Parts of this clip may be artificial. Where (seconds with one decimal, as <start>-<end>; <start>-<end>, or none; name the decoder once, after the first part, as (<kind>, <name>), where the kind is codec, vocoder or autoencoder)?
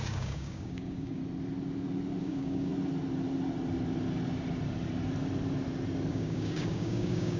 0.0-1.2 (codec, DAC); 2.2-2.7; 6.1-7.4